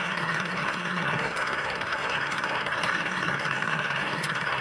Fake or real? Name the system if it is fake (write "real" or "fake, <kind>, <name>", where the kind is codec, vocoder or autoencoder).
fake, codec, SNAC